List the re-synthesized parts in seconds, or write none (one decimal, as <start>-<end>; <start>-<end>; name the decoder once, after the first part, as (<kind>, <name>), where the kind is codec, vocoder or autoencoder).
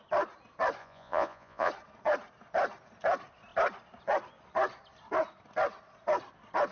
0.8-1.7 (vocoder, Vocos)